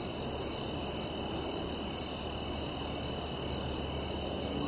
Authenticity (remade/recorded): recorded